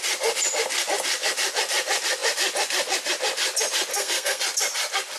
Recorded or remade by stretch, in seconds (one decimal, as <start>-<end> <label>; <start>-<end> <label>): 0.0-3.9 recorded; 3.9-4.4 remade; 4.4-5.2 recorded